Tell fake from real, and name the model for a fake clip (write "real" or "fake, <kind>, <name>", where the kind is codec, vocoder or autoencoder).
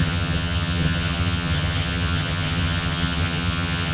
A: fake, vocoder, HiFi-GAN